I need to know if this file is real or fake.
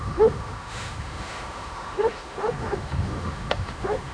fake